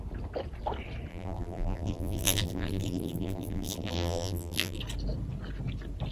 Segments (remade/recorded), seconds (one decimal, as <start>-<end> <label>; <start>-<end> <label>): 0.0-1.1 recorded; 1.1-4.8 remade; 4.8-6.1 recorded